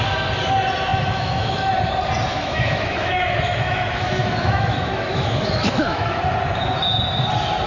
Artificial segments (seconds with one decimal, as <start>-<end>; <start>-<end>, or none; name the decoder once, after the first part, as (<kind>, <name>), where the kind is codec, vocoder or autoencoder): 0.9-1.7 (autoencoder, DAC-VAE); 2.3-6.2

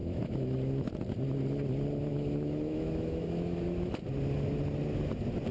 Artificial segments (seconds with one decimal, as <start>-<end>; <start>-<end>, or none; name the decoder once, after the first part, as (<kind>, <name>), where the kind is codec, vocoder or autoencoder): 0.0-0.9 (autoencoder, DAC-VAE); 2.1-3.9

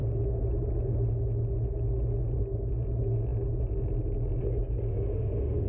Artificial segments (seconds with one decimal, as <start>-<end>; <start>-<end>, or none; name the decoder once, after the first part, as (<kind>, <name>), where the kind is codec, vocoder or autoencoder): 4.9-5.7 (autoencoder, DAC-VAE)